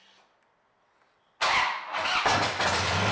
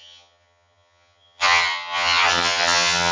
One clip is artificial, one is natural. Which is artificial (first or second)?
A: second